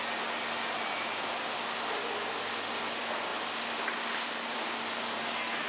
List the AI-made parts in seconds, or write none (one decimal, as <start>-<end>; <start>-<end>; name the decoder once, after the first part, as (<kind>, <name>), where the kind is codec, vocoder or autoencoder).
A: none